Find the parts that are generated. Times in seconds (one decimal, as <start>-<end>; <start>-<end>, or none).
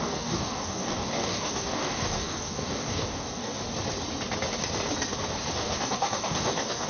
0.0-3.6; 5.5-6.9